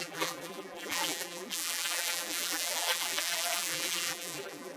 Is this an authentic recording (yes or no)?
no